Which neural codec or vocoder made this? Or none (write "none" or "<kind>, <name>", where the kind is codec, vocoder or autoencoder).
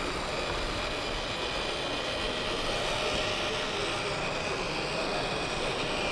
none